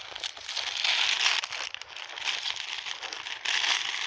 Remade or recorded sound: recorded